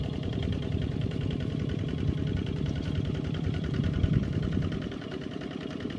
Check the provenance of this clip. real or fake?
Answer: fake